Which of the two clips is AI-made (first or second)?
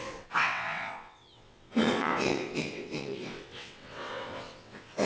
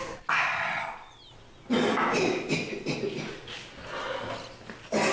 first